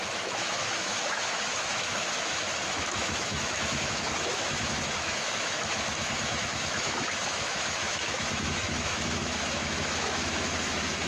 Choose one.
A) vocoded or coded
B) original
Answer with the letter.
A